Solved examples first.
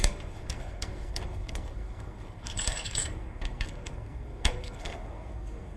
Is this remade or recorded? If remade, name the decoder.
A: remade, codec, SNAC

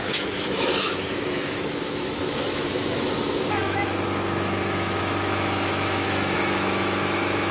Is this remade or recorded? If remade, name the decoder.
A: remade, autoencoder, DAC-VAE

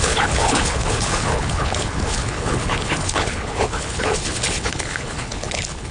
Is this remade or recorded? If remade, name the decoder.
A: remade, codec, HILCodec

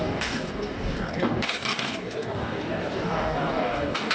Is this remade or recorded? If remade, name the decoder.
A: remade, codec, DAC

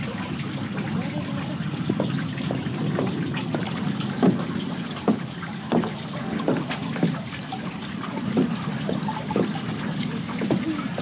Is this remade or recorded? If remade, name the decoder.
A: recorded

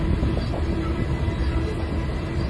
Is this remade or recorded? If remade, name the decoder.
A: recorded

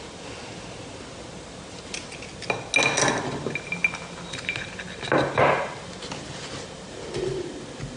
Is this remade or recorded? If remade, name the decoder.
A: recorded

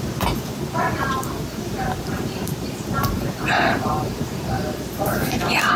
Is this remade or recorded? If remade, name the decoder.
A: remade, vocoder, BigVGAN v2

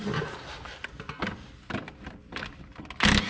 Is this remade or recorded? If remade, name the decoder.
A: recorded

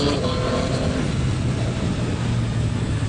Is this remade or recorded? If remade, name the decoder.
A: recorded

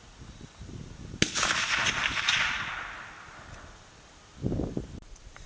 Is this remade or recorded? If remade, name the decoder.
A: recorded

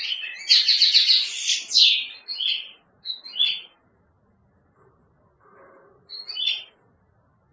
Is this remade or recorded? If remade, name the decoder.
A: recorded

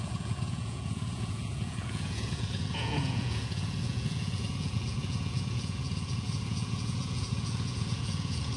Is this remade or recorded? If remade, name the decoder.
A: remade, vocoder, Vocos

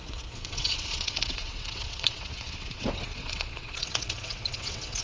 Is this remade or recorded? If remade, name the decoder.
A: remade, vocoder, WaveNeXt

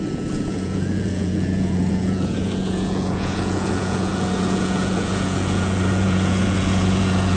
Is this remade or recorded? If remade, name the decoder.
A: remade, vocoder, Vocos